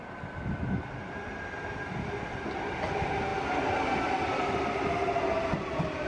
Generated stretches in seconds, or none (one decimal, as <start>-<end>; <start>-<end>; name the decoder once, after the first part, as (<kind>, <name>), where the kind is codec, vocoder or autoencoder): none